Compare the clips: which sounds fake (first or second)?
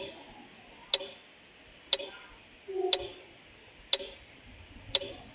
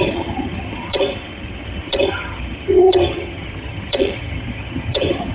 second